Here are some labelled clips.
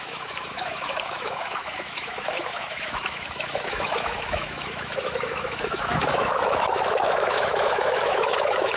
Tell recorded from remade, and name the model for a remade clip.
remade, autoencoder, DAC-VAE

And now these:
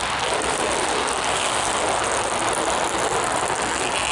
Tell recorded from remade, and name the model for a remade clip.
recorded